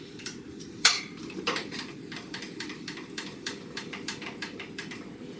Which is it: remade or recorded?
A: remade